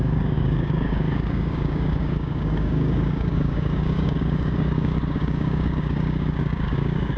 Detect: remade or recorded remade